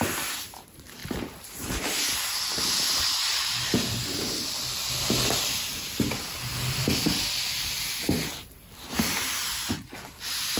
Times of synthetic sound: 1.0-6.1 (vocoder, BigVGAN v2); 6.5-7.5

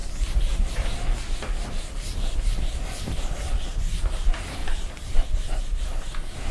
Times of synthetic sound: 4.6-5.2 (vocoder, BigVGAN v2)

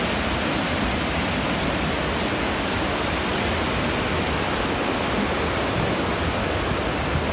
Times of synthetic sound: none